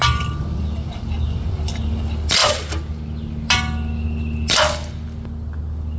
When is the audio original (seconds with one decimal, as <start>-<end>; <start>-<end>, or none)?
0.0-6.0